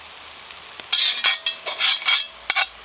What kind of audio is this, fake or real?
real